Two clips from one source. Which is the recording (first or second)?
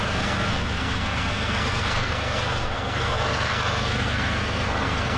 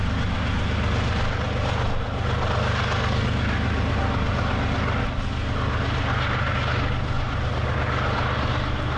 second